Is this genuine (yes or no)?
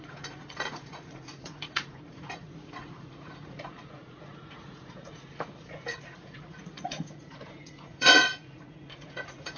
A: no